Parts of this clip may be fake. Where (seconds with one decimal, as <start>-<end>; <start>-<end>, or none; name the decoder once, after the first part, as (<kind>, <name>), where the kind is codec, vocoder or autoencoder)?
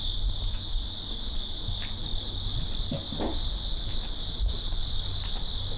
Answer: 2.1-3.5 (vocoder, BigVGAN v2)